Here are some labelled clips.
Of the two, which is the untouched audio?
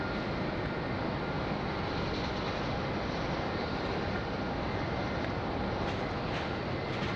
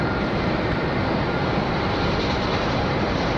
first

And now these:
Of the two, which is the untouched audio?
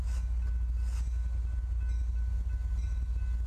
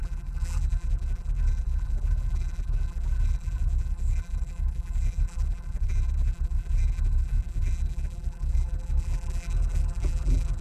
first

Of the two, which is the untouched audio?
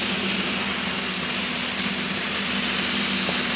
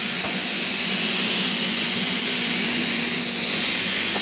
first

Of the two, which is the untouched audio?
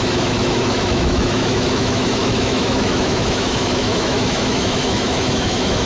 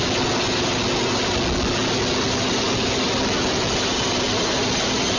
second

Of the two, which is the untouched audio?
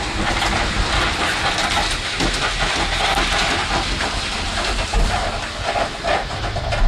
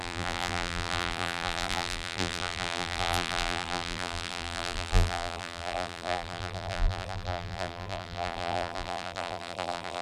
first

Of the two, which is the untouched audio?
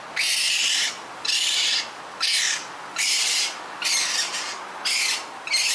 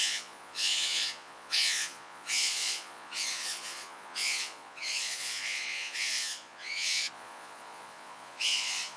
first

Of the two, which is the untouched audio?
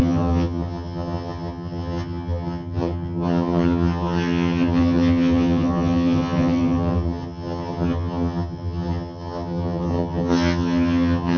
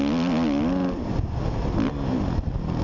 second